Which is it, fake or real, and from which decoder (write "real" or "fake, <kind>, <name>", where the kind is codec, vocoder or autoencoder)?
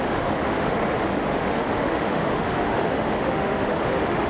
fake, autoencoder, DAC-VAE